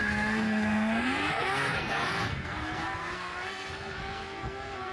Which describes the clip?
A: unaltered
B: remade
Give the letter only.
B